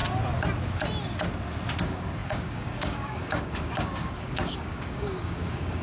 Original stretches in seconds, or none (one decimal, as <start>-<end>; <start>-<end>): 0.0-1.8